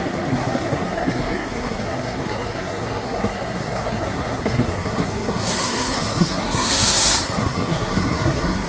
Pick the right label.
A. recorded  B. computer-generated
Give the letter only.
B